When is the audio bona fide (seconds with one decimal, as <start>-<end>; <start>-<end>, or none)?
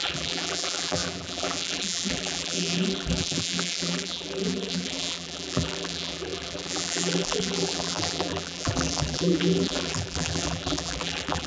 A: none